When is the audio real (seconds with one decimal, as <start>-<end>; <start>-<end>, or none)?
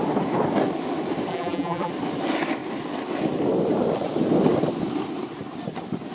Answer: 0.0-1.3; 1.9-6.1